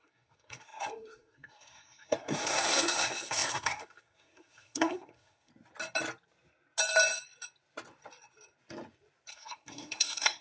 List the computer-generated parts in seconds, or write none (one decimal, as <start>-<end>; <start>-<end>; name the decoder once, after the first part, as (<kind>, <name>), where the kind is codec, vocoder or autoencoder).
0.0-5.5 (codec, SNAC); 9.3-10.4